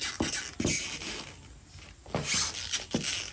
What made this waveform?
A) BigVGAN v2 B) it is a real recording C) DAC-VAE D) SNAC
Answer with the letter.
B